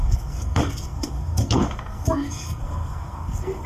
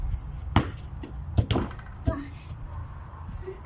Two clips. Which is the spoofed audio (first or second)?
first